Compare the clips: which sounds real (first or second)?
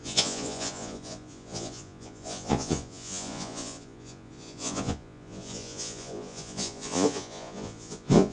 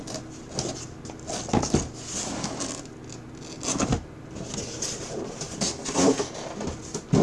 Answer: second